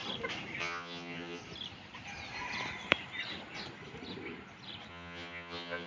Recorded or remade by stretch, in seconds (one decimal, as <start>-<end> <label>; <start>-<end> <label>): 0.0-0.6 recorded; 0.6-1.4 remade; 1.4-4.9 recorded; 4.9-5.9 remade